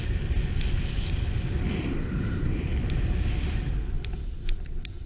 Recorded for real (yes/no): yes